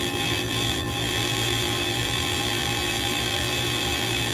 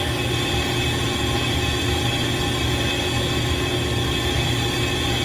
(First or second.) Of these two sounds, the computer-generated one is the first